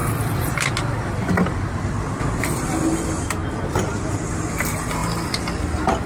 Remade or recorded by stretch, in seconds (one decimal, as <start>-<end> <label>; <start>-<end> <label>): 0.0-6.1 recorded